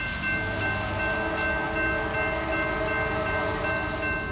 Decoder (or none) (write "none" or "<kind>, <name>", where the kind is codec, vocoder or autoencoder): none